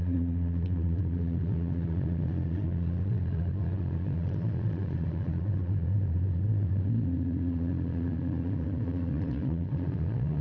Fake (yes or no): yes